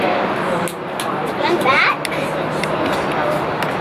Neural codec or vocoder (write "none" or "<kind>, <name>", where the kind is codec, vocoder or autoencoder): none